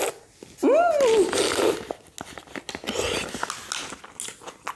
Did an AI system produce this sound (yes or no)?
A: no